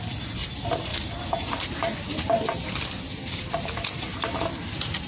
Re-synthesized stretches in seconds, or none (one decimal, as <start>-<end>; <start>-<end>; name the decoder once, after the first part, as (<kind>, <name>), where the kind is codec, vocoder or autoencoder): none